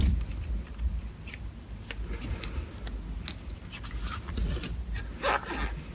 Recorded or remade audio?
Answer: recorded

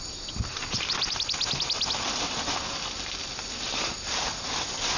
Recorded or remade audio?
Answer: recorded